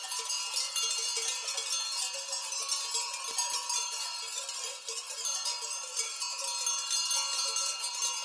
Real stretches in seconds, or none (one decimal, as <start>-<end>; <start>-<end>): 0.0-4.1; 6.1-8.2